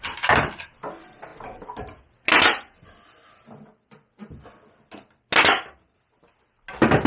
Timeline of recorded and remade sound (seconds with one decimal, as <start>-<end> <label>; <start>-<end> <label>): 0.0-7.1 recorded